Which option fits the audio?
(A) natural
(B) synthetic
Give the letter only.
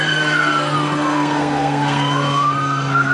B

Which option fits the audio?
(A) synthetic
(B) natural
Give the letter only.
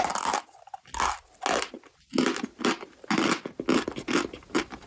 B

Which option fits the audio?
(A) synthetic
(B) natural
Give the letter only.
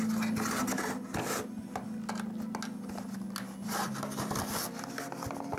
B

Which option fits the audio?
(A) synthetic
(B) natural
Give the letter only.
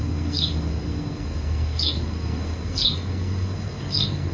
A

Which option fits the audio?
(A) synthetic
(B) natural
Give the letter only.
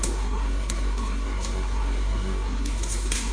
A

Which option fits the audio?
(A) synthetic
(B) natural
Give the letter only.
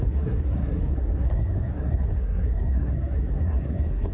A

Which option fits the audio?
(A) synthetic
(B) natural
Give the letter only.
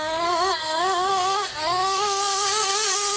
A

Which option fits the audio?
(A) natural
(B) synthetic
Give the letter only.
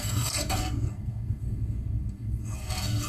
B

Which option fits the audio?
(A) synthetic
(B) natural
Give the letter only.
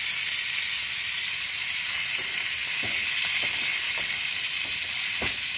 B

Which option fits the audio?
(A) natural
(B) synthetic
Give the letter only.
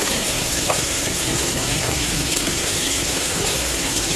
B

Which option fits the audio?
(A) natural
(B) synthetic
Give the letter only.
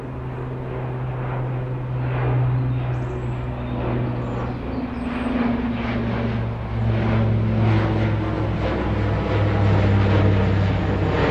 A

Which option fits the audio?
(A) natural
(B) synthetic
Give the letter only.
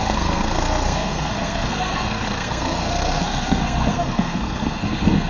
B